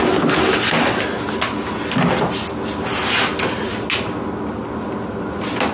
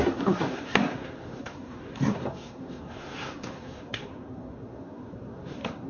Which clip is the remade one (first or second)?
second